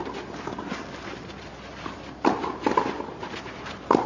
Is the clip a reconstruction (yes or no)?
no